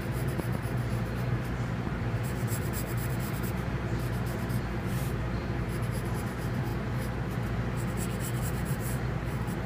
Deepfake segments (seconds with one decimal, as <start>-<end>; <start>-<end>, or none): 0.0-6.7; 8.4-9.7